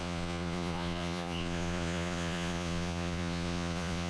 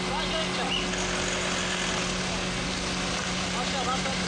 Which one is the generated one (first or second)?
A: first